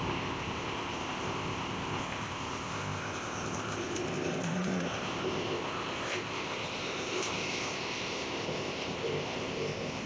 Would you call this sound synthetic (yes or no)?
yes